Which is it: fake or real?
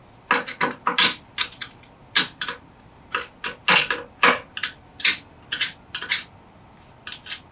real